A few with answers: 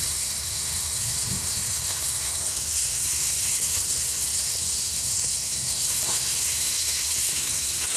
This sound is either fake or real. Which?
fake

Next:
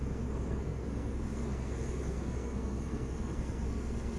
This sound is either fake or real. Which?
fake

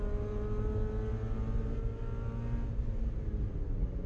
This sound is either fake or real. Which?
real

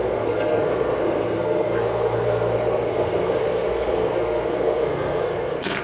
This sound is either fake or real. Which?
fake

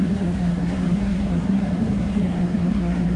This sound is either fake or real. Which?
fake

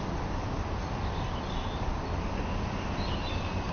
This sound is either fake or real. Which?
real